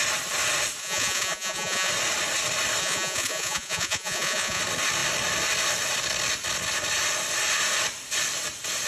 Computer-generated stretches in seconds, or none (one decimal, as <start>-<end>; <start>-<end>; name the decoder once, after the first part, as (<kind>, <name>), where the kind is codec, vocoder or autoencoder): 0.8-1.9 (vocoder, Vocos); 2.8-4.6